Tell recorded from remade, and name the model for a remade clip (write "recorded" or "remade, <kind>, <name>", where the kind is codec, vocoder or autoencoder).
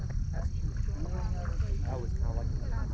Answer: recorded